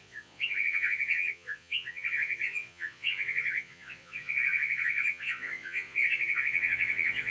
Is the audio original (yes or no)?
no